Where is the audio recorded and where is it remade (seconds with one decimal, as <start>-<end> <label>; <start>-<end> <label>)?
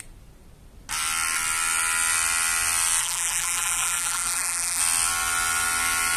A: 0.0-3.0 recorded; 3.0-4.8 remade; 4.8-6.2 recorded